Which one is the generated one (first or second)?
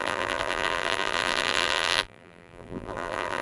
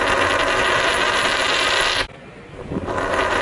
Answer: first